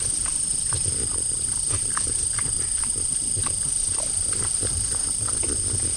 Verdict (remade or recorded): remade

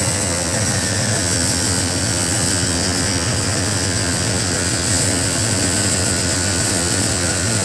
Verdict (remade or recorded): remade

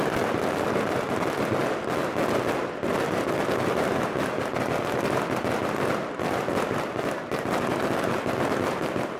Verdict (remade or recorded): recorded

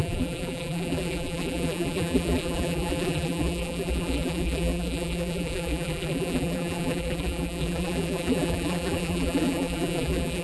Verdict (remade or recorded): remade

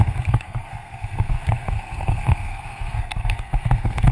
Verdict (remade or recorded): remade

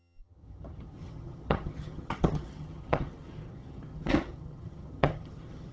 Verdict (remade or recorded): remade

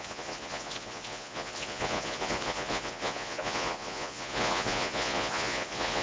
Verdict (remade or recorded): remade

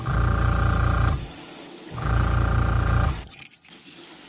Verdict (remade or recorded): recorded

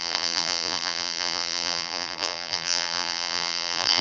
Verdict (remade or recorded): remade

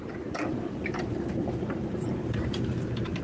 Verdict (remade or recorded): remade